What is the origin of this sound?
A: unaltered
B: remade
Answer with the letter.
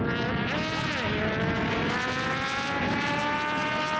A